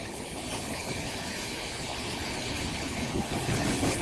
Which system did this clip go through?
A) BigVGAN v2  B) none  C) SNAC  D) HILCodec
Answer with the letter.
D